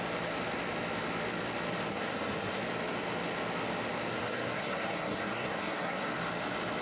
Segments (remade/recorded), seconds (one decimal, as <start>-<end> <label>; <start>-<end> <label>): 0.0-1.9 recorded; 1.9-2.6 remade; 2.6-4.1 recorded; 4.1-6.2 remade; 6.2-6.8 recorded